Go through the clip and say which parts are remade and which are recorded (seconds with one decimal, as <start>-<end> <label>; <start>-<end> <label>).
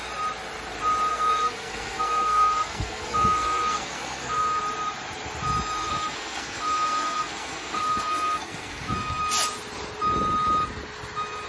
0.0-1.1 recorded; 1.1-4.6 remade; 4.6-5.8 recorded; 5.8-9.2 remade; 9.2-11.5 recorded